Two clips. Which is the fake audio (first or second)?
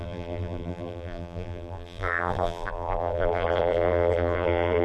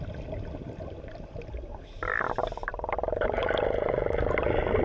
first